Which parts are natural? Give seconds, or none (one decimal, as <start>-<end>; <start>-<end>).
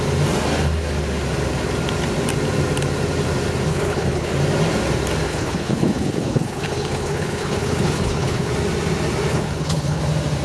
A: 0.0-3.7; 4.3-5.3; 8.5-9.3; 10.0-10.4